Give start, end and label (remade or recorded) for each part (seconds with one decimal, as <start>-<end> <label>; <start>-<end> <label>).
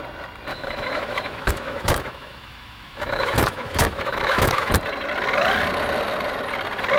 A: 0.0-0.5 recorded; 0.5-4.7 remade; 4.7-7.0 recorded